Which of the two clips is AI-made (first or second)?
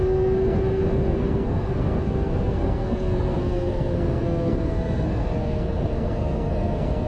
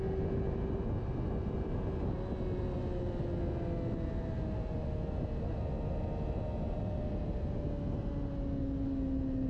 first